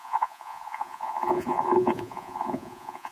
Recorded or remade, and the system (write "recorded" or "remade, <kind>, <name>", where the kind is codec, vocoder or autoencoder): remade, vocoder, Vocos